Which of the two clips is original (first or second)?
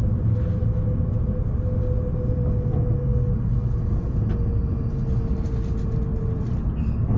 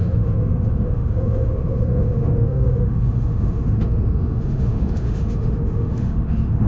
first